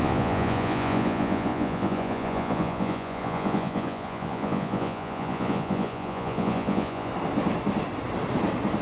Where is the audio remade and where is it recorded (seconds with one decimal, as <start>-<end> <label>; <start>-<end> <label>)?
0.0-7.1 remade; 7.1-8.8 recorded

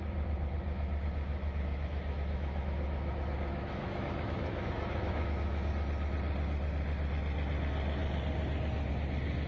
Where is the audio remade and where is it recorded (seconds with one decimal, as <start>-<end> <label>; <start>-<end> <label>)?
0.0-1.3 recorded; 1.3-5.7 remade; 5.7-9.5 recorded